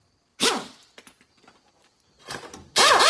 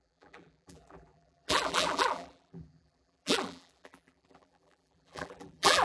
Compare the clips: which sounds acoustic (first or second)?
first